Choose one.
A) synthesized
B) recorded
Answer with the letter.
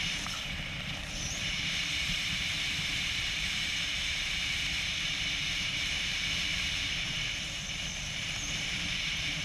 A